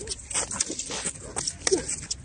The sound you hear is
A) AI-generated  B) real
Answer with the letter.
B